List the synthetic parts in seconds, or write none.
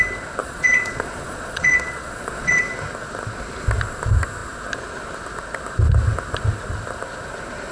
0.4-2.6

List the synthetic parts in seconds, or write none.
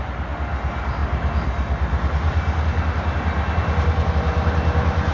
none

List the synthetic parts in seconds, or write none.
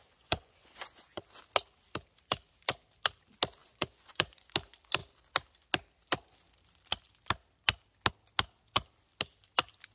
0.0-1.2; 3.6-4.5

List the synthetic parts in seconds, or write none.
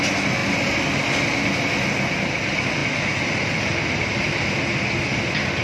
none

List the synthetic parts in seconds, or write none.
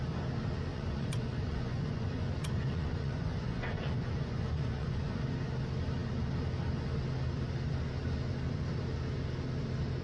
0.7-5.2